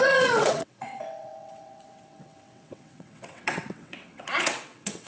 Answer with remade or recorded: remade